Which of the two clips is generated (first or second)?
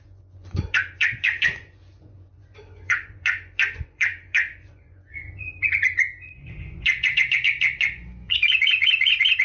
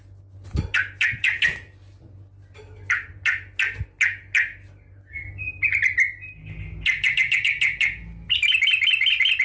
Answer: first